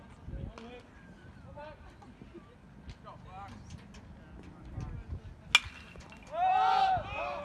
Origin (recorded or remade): recorded